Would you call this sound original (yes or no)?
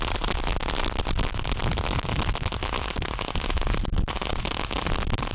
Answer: yes